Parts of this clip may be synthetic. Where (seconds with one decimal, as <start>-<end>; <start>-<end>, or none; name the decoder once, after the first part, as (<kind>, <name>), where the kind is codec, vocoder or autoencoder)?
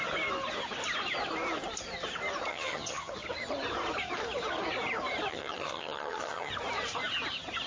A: 2.5-3.1 (vocoder, HiFi-GAN); 5.3-6.5